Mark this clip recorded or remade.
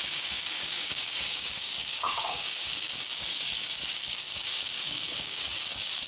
remade